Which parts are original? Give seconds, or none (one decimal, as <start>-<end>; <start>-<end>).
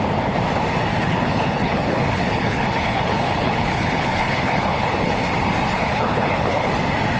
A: 0.0-1.0; 5.3-5.7; 6.7-7.2